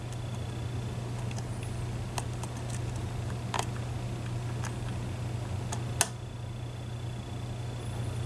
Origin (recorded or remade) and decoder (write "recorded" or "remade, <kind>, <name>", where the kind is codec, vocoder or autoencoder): recorded